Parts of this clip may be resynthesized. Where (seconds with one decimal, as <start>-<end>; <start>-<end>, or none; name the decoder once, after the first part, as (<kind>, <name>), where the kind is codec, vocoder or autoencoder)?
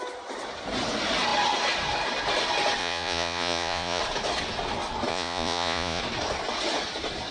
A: 2.8-4.0 (vocoder, Vocos); 5.1-6.0